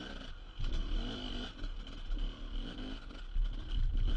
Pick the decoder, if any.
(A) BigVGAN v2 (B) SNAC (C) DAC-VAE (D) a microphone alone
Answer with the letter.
D